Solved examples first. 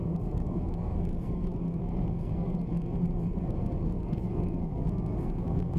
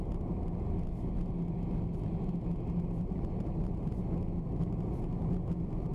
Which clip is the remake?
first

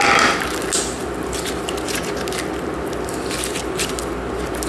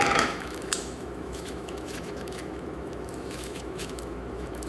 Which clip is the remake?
second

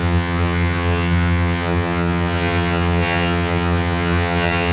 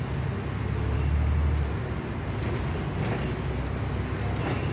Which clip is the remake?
first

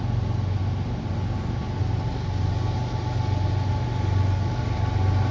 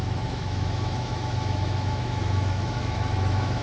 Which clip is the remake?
second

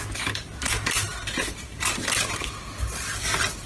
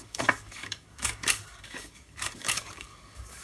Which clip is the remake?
second